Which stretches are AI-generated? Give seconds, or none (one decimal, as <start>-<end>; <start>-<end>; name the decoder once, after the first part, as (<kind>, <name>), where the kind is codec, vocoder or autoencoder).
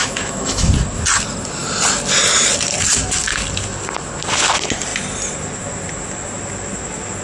0.0-0.7 (autoencoder, DAC-VAE)